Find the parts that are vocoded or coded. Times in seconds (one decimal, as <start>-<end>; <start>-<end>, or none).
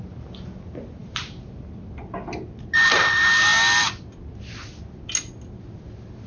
1.0-2.0